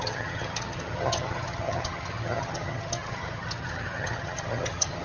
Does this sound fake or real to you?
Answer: fake